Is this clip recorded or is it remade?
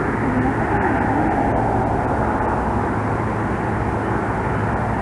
recorded